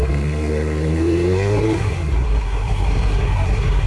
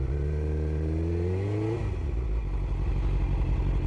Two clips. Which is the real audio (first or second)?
second